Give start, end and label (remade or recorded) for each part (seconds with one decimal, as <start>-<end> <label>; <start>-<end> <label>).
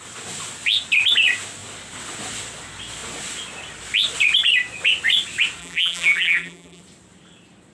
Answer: 0.0-5.6 recorded; 5.6-6.8 remade; 6.8-7.7 recorded